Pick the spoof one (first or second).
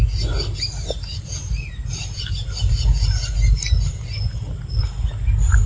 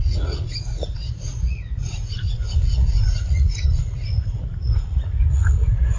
second